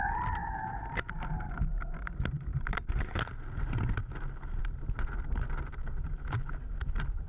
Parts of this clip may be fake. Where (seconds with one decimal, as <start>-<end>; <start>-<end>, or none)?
none